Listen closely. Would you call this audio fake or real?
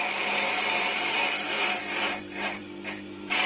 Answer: fake